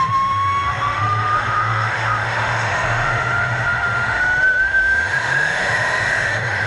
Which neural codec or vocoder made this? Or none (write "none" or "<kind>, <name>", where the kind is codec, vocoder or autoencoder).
autoencoder, DAC-VAE